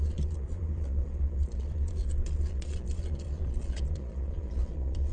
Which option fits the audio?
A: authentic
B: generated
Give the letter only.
B